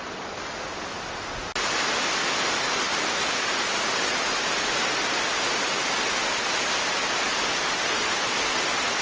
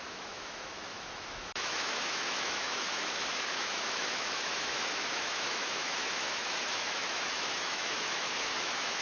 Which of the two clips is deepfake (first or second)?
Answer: second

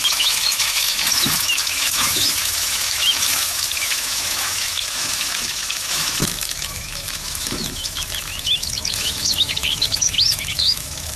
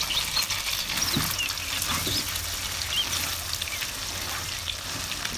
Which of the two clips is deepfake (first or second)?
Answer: first